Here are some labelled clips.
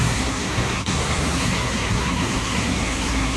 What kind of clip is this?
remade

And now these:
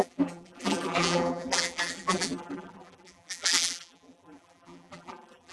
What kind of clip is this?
remade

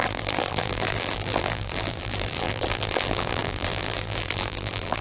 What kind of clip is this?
remade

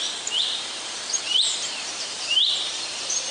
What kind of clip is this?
remade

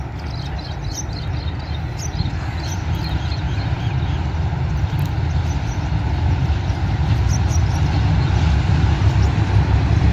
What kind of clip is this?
recorded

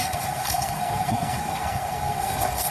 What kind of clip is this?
remade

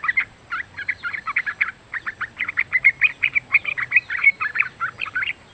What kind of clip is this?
recorded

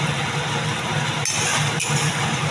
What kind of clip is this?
recorded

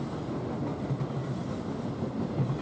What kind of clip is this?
recorded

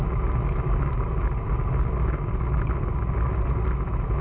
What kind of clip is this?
recorded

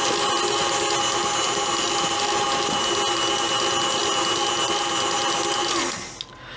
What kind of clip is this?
recorded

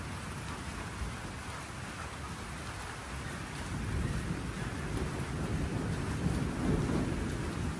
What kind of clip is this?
recorded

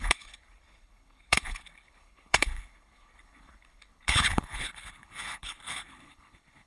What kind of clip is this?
remade